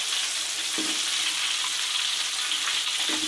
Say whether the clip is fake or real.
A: real